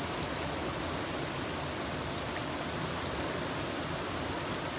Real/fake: real